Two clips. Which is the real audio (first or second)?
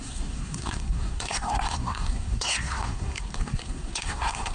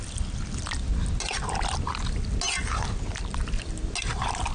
second